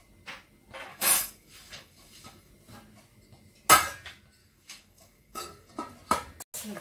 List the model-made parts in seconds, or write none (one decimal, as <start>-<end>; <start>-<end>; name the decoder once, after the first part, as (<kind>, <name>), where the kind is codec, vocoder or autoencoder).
0.9-2.5 (codec, DAC); 4.4-5.7